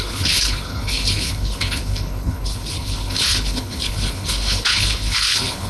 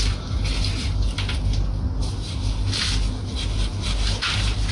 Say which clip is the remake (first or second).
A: first